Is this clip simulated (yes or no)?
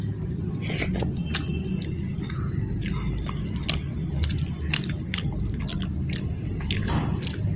no